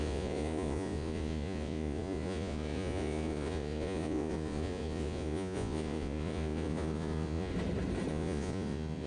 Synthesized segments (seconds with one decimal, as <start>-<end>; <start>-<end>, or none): 0.0-7.5; 8.1-9.1